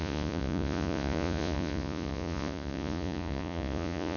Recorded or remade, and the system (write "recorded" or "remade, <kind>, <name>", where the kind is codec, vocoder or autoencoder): remade, vocoder, Vocos